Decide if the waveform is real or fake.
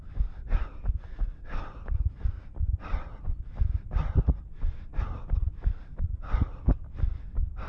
real